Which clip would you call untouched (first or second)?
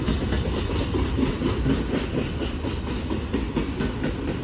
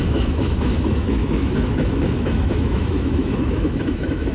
first